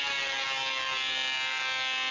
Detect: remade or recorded recorded